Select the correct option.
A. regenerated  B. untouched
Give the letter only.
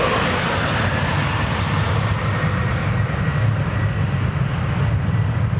B